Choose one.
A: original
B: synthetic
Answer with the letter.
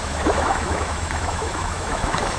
B